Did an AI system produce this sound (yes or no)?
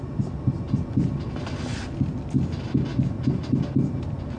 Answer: no